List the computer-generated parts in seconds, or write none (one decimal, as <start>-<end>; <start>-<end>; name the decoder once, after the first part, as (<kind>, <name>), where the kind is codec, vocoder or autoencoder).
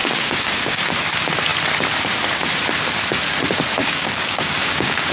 0.0-0.9 (codec, DAC); 3.8-5.1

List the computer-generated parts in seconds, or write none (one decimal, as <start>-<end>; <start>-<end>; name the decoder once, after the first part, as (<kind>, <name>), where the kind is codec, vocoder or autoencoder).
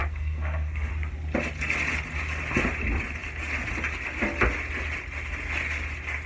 0.0-0.9 (codec, SNAC)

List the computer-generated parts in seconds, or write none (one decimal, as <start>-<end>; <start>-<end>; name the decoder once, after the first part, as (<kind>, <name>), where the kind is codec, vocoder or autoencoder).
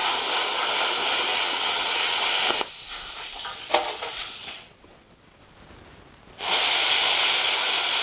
1.3-2.2 (vocoder, WaveNeXt); 3.5-5.5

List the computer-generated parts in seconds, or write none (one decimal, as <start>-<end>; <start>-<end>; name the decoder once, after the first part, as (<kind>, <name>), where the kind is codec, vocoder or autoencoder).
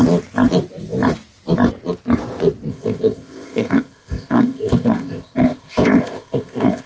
2.7-6.9 (codec, ZipCodec)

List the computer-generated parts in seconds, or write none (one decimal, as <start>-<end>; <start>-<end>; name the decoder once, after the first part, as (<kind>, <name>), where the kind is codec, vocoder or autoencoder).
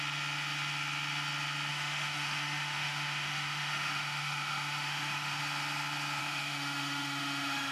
1.7-5.4 (autoencoder, DAC-VAE); 6.2-7.7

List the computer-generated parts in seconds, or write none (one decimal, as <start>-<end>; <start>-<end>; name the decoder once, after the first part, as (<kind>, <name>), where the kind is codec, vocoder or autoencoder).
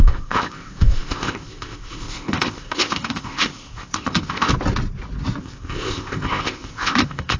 0.0-4.5 (codec, ZipCodec); 5.4-7.4